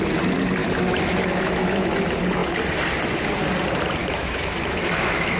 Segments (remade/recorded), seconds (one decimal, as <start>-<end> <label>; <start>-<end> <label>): 0.0-0.6 recorded; 0.6-1.9 remade; 1.9-4.0 recorded; 4.0-5.4 remade